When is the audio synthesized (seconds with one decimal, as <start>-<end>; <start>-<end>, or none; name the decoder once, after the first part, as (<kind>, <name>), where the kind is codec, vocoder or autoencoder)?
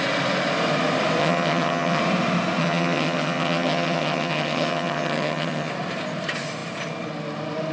1.2-2.0 (vocoder, HiFi-GAN); 2.6-5.7